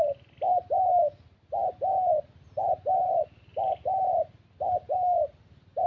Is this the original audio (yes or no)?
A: yes